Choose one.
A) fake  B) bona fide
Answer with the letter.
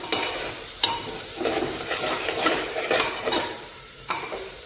A